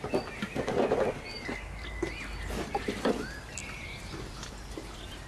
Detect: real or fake real